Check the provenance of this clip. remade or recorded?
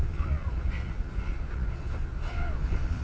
remade